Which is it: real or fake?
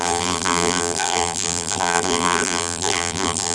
fake